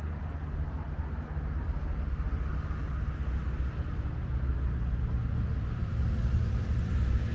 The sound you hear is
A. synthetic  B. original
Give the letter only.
B